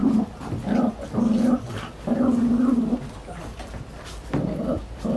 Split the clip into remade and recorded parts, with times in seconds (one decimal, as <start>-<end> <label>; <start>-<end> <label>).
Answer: 0.0-5.2 recorded

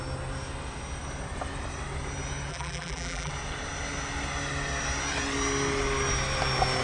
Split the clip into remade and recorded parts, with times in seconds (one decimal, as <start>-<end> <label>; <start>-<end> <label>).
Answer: 0.0-2.5 recorded; 2.5-3.3 remade; 3.3-6.8 recorded

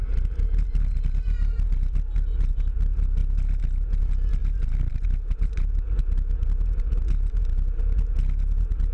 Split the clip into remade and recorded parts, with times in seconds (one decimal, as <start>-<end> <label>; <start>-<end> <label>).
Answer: 0.0-8.9 recorded

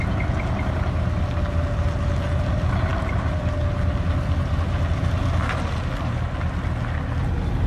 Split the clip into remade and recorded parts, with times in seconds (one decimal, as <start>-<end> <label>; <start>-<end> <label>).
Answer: 0.0-7.7 recorded

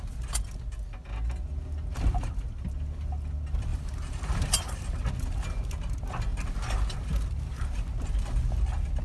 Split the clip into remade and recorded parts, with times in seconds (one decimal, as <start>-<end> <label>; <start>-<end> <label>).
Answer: 0.0-3.7 recorded; 3.7-5.0 remade; 5.0-9.0 recorded

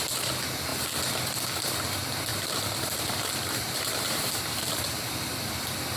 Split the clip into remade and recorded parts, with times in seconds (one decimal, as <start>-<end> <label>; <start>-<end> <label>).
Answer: 0.0-2.3 recorded; 2.3-5.1 remade; 5.1-6.0 recorded